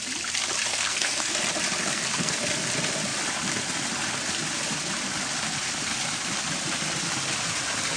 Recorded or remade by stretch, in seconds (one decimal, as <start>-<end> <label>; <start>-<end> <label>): 0.0-0.7 recorded; 0.7-1.4 remade; 1.4-1.8 recorded; 1.8-2.4 remade; 2.4-8.0 recorded